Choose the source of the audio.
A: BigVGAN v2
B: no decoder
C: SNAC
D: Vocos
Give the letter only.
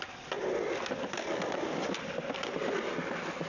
B